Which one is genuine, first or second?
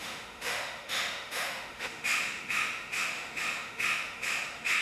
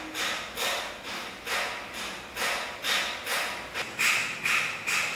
second